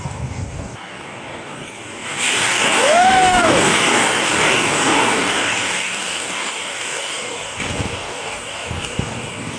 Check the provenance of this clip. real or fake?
fake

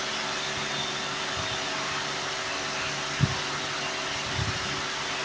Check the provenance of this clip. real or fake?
real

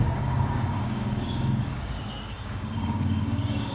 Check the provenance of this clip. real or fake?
fake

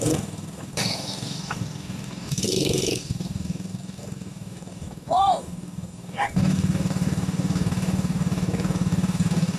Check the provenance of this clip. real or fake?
fake